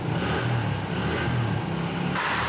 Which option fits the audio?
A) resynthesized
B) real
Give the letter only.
B